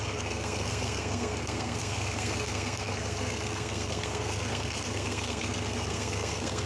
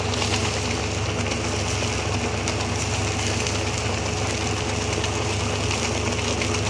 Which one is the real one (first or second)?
second